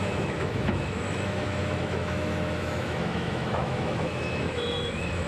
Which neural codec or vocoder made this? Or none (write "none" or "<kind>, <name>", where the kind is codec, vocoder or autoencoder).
autoencoder, DAC-VAE